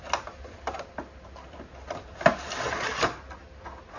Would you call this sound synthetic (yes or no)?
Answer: no